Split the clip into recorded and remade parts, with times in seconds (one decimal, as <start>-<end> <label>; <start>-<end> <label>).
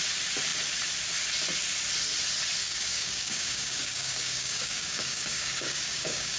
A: 0.0-2.6 recorded; 2.6-6.4 remade